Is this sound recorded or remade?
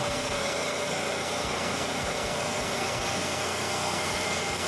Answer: remade